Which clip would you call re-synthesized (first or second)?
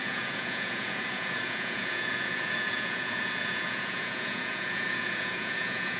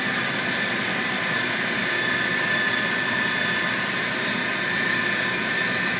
first